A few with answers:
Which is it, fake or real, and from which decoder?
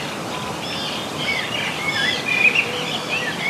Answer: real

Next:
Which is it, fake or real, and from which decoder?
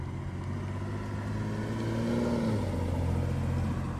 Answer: real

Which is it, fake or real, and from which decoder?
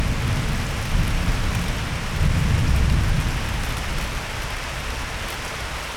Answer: real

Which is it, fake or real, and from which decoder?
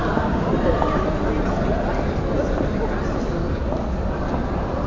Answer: real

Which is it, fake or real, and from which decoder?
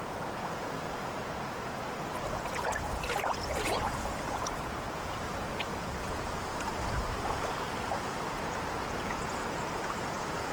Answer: fake, vocoder, Vocos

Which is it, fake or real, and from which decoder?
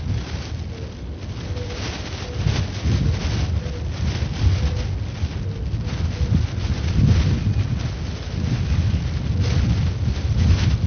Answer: real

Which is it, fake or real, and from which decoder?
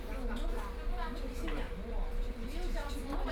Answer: fake, vocoder, BigVGAN v2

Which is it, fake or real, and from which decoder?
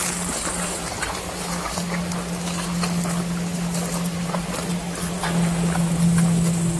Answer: real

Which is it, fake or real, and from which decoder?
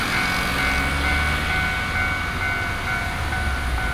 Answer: real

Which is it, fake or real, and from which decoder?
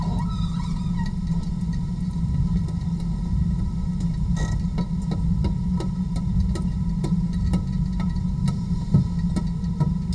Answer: real